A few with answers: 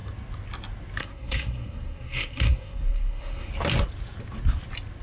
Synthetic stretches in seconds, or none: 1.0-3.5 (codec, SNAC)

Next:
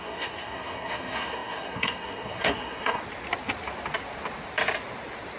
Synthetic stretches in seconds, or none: 0.0-3.0 (codec, SNAC)

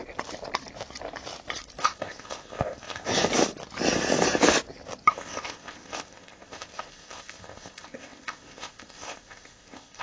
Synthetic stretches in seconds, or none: 1.8-3.1 (codec, ZipCodec); 5.1-10.0

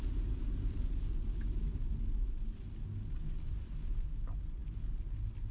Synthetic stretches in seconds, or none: none

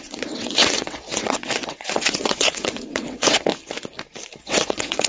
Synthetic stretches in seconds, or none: 0.0-3.5 (vocoder, WaveNeXt); 4.4-5.1

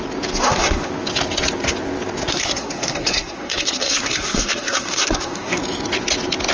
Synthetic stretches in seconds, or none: 0.4-0.9 (codec, SNAC); 2.3-5.6